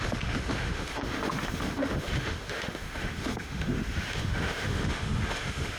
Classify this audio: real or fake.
fake